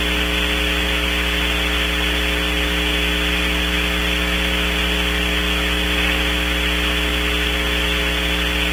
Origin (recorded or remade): recorded